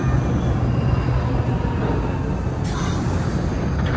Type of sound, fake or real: real